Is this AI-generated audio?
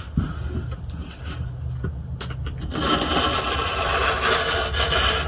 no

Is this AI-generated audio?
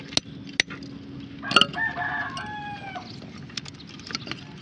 no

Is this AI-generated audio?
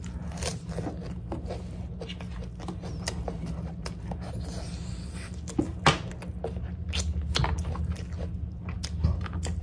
no